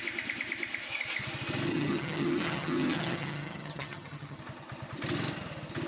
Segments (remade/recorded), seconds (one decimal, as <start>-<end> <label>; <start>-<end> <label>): 0.0-1.7 recorded; 1.7-4.4 remade; 4.4-5.9 recorded